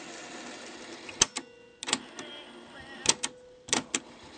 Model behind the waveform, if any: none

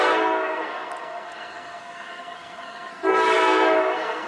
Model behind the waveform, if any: codec, SNAC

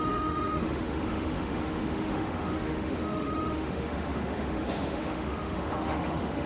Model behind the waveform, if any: autoencoder, DAC-VAE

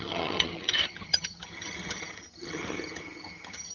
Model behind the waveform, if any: vocoder, HiFi-GAN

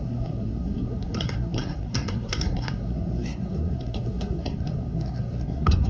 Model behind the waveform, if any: codec, SNAC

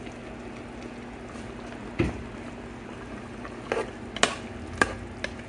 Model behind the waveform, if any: none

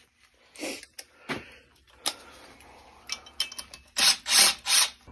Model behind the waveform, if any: none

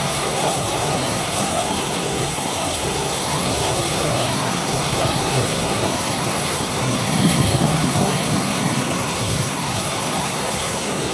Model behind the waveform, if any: codec, SNAC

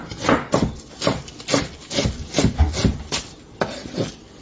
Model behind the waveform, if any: none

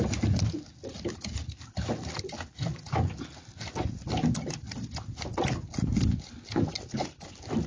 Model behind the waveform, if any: none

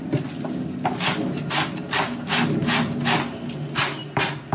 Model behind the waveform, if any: none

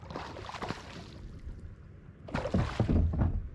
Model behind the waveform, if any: none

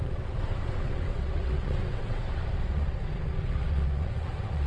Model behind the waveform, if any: vocoder, WaveNeXt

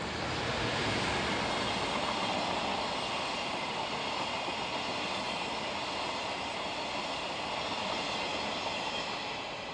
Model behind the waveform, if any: none